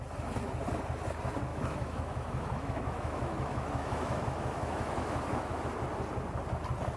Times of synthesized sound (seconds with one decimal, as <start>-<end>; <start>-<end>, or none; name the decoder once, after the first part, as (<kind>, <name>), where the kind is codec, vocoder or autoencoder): 1.5-5.6 (autoencoder, DAC-VAE)